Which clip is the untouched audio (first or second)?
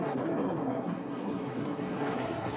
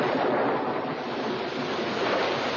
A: second